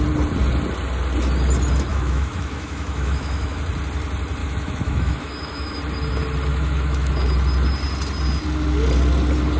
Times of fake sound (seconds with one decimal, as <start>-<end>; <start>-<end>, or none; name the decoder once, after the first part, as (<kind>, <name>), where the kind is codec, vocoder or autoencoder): 1.9-3.6 (autoencoder, DAC-VAE); 4.4-5.8; 6.5-7.1